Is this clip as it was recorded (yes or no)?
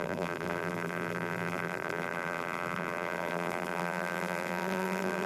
no